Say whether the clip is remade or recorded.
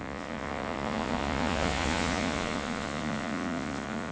remade